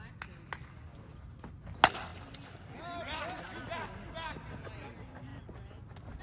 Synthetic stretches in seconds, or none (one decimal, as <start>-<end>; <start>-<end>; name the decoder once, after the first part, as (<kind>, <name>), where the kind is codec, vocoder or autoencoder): none